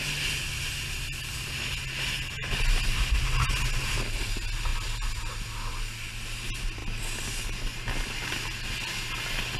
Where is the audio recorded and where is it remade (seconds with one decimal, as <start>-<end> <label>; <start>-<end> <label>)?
0.0-9.6 recorded